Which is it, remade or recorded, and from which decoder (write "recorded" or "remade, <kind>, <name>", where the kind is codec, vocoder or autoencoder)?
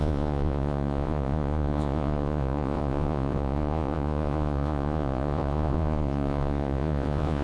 remade, vocoder, Vocos